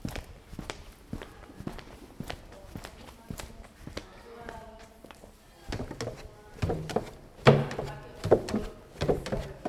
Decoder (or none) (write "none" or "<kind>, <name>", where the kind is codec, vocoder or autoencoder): none